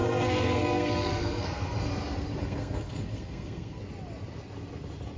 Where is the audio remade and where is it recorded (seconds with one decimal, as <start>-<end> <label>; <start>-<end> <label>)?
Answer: 0.0-1.9 remade; 1.9-2.4 recorded; 2.4-3.8 remade; 3.8-5.2 recorded